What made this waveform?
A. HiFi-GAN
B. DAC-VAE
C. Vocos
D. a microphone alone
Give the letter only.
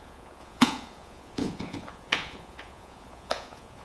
C